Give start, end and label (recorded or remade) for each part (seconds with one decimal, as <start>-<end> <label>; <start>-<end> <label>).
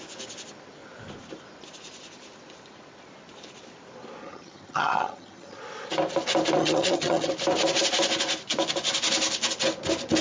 0.0-4.2 recorded; 4.2-5.6 remade; 5.6-6.6 recorded; 6.6-7.3 remade; 7.3-10.2 recorded